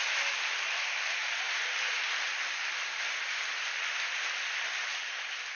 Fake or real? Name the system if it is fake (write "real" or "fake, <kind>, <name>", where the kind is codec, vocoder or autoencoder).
real